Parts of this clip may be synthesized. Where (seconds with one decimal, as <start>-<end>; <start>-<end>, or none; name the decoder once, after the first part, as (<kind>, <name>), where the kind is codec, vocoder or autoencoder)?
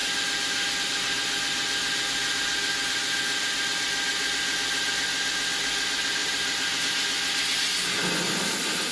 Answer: 6.2-6.8 (vocoder, BigVGAN v2)